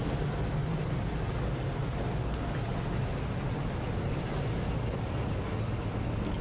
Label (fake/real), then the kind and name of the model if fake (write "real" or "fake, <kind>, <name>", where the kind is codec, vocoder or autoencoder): real